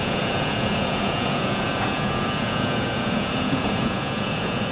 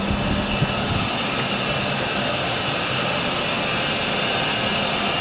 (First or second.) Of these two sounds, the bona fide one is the second